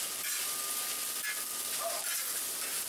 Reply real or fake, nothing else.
real